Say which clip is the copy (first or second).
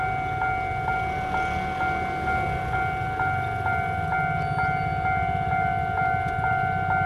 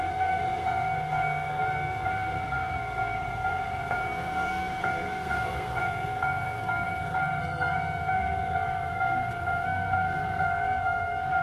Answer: second